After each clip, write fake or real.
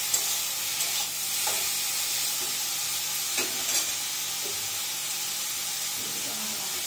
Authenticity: real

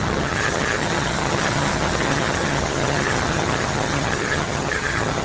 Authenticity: fake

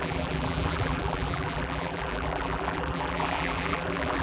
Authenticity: fake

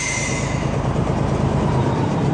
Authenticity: fake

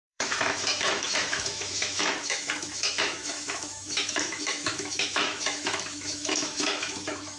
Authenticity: fake